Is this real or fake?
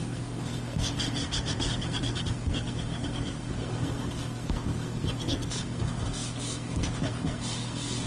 fake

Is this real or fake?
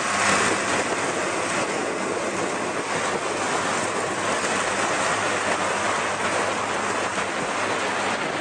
real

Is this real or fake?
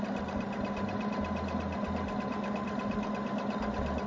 real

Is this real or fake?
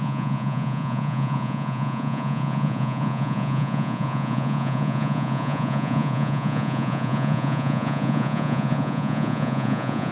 fake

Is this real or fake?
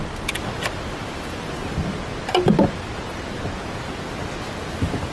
real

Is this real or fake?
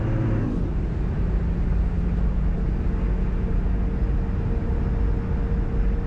real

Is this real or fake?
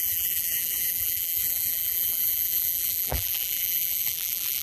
fake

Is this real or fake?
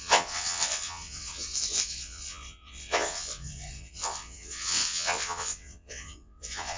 fake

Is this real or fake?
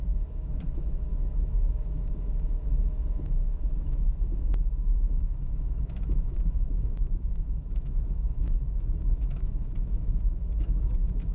fake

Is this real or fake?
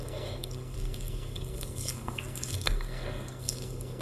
fake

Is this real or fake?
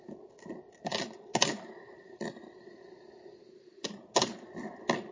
real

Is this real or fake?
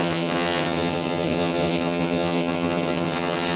fake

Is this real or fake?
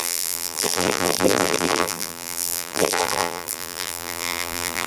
fake